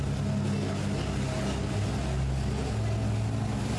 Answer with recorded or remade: recorded